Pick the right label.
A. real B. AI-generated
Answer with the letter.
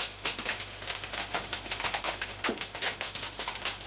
B